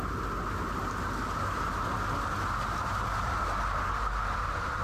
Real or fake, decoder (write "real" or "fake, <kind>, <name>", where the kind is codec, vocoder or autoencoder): real